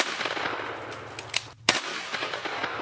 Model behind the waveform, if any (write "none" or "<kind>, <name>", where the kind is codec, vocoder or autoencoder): none